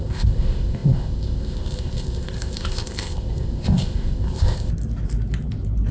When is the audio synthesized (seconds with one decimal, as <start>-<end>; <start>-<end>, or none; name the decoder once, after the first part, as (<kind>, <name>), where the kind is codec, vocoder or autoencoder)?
0.0-4.7 (codec, ZipCodec)